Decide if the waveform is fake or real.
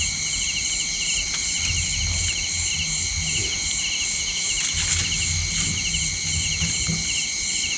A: real